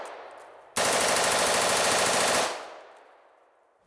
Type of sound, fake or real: real